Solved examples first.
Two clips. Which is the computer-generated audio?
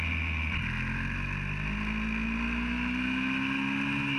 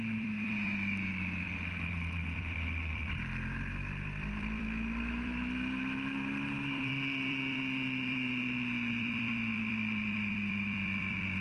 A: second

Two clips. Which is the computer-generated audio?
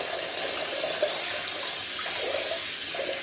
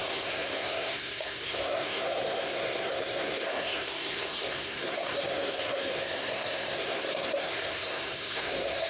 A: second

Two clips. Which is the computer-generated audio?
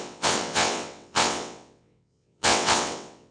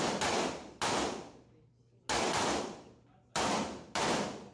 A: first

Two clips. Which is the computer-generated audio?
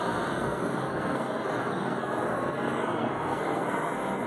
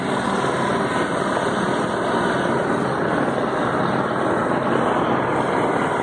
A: first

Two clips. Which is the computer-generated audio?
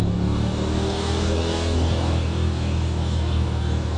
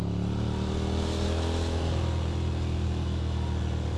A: first